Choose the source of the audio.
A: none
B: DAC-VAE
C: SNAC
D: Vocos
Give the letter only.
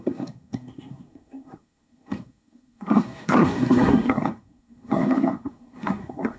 C